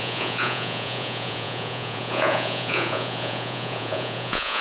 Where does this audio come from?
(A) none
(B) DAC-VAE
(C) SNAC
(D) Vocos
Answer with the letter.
D